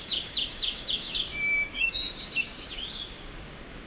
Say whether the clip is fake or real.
fake